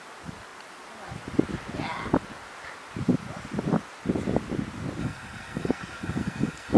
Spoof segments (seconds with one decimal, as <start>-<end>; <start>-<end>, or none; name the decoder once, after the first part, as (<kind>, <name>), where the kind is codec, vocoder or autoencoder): 5.0-6.8 (codec, SNAC)